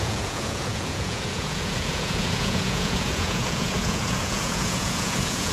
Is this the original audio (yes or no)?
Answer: no